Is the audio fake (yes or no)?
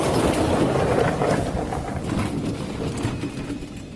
no